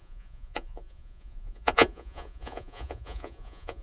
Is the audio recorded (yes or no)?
no